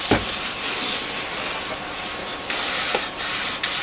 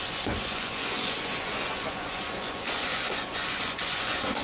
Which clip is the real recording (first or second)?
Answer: first